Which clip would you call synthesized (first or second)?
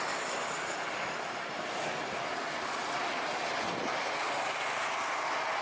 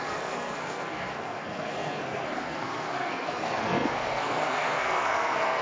second